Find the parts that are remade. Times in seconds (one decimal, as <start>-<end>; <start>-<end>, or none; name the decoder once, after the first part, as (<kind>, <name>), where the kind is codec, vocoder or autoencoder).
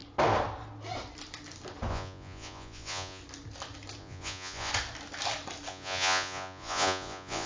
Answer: 1.9-3.2 (vocoder, Vocos); 4.0-4.7; 5.7-7.5